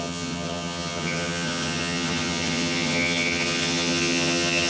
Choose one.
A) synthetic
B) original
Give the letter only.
A